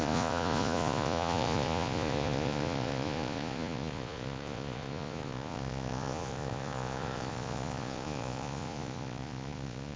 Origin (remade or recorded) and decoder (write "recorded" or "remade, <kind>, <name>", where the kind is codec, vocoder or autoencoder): remade, vocoder, Vocos